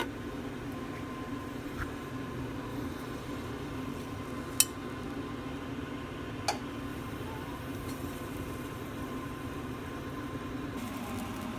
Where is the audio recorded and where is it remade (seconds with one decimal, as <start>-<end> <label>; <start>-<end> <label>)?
0.0-1.4 recorded; 1.4-2.1 remade; 2.1-2.7 recorded; 2.7-3.5 remade; 3.5-6.9 recorded; 6.9-11.1 remade; 11.1-11.6 recorded